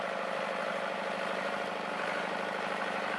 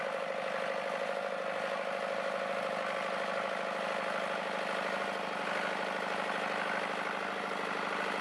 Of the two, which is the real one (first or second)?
second